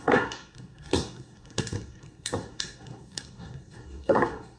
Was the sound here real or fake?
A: fake